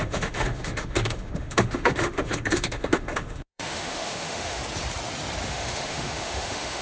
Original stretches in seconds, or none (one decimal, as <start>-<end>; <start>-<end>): 4.6-5.5